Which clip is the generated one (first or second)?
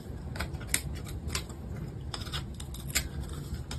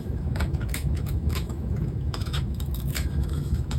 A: second